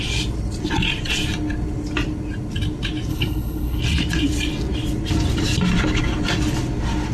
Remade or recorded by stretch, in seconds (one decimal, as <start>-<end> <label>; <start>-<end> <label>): 0.0-3.1 recorded; 3.1-3.8 remade; 3.8-7.1 recorded